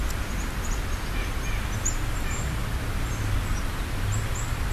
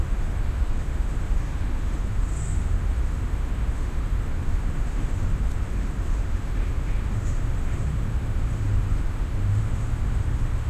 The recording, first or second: first